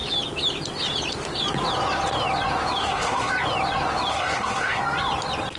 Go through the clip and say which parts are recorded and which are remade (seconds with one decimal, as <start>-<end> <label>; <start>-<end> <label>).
0.0-2.8 recorded; 2.8-3.3 remade; 3.3-4.1 recorded; 4.1-4.8 remade; 4.8-5.6 recorded